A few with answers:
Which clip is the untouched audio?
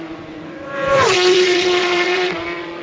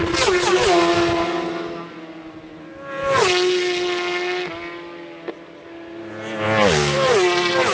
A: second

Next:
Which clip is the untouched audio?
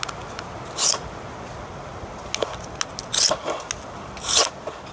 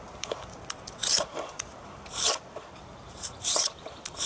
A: first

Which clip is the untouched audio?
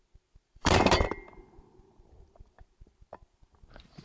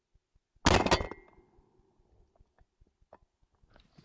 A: second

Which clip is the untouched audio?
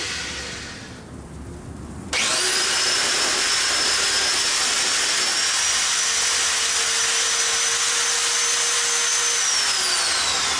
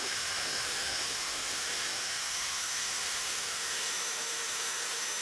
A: first